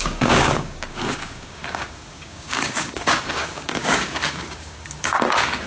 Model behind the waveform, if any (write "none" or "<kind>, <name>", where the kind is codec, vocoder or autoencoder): codec, DAC